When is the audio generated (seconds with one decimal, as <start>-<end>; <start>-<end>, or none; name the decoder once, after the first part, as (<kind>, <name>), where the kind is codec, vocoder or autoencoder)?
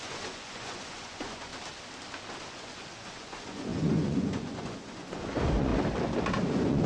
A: 0.0-1.5 (vocoder, Vocos); 2.5-5.7; 6.5-6.9